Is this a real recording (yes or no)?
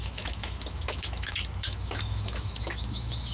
no